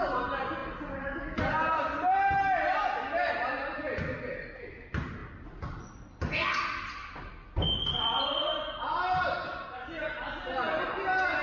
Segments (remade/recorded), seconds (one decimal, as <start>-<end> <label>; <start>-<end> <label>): 0.0-11.4 recorded